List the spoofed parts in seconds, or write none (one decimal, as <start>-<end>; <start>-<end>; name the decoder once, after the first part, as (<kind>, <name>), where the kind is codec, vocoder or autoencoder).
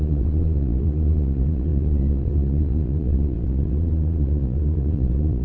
0.0-5.4 (vocoder, Vocos)